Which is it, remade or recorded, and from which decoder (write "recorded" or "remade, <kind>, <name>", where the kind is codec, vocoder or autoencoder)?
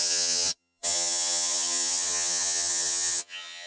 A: remade, vocoder, HiFi-GAN